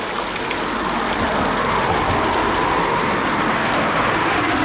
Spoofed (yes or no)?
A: no